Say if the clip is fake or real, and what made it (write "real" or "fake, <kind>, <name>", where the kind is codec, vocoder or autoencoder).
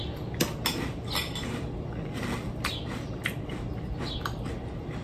real